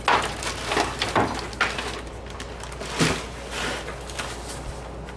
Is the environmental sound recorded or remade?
recorded